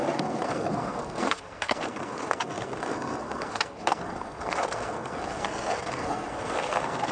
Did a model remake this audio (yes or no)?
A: yes